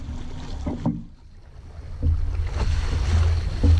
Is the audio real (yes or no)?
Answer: yes